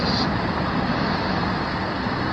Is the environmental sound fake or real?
real